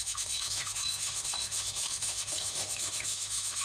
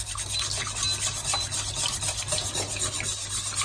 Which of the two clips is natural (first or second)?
second